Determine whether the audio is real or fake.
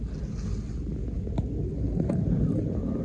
real